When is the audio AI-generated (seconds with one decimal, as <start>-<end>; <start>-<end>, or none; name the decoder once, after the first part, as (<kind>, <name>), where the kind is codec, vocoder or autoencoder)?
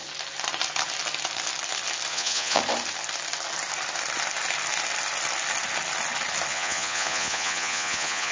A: 2.1-2.6 (vocoder, Vocos); 6.5-8.3